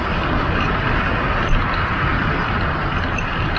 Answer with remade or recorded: recorded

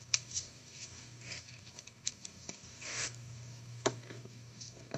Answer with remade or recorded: remade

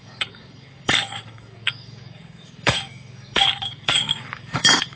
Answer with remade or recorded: remade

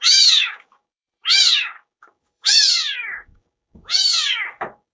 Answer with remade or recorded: remade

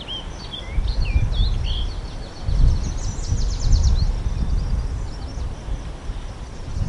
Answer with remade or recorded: recorded